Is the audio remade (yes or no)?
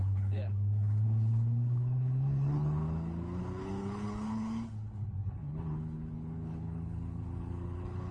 yes